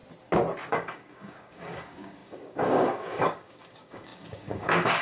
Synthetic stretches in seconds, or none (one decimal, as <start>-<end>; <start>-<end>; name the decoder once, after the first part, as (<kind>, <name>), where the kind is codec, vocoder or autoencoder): 0.7-5.0 (codec, DAC)